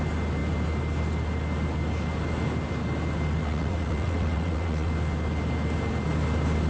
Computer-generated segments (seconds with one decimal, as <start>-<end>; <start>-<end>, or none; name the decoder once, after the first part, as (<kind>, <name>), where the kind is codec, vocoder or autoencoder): 3.4-4.9 (vocoder, WaveNeXt)